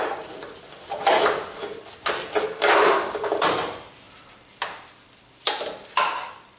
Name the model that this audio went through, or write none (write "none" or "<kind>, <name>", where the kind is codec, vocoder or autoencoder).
none